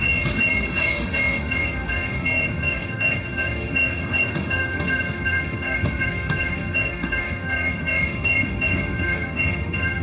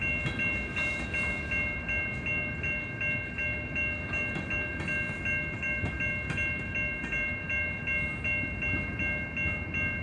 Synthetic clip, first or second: first